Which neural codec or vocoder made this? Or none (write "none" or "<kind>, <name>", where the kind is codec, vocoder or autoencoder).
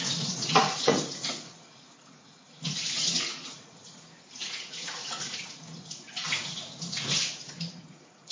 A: vocoder, Vocos